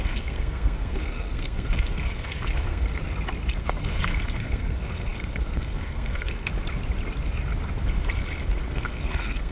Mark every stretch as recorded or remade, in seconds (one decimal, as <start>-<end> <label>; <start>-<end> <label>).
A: 0.0-3.0 remade; 3.0-3.6 recorded; 3.6-6.5 remade; 6.5-8.7 recorded; 8.7-9.5 remade